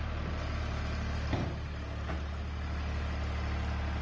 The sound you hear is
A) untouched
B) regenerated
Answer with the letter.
A